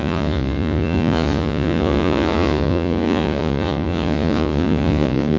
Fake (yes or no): yes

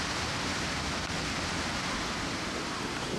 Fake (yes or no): no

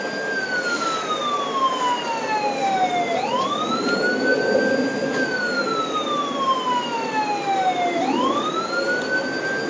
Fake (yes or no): no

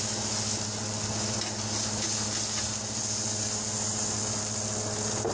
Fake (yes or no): no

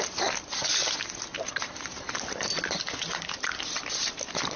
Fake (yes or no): no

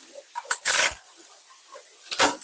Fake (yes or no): no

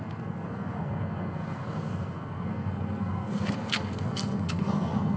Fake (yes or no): yes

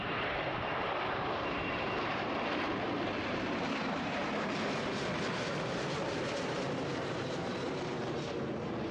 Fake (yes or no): yes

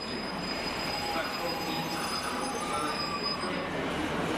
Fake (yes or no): yes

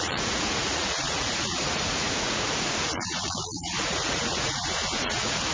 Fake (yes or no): yes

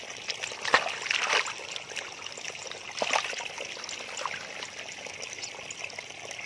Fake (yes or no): no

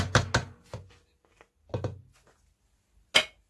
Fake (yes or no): no